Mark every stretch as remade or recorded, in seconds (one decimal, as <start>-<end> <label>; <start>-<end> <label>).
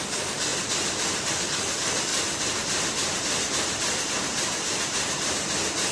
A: 0.0-2.1 recorded; 2.1-5.9 remade